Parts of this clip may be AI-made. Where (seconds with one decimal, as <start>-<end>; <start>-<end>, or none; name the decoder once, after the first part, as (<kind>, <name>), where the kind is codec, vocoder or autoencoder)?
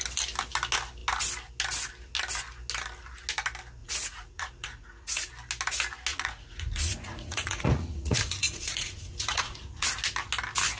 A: 3.8-5.3 (vocoder, Vocos); 6.1-9.9